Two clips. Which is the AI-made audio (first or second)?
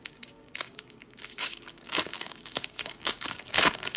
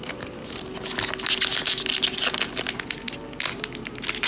first